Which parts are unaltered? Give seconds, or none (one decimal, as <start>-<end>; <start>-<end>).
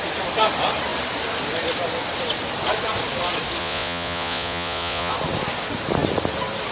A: 0.0-3.6; 5.1-6.7